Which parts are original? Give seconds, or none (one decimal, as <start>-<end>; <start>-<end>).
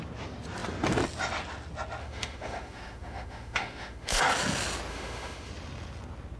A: 0.0-2.0; 4.2-4.9; 5.5-6.4